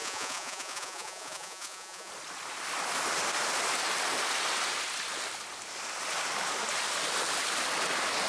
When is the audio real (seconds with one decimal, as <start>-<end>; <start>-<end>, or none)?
2.1-8.3